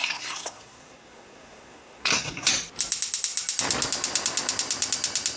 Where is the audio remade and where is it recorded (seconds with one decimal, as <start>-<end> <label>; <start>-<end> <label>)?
0.0-2.5 remade; 2.5-5.4 recorded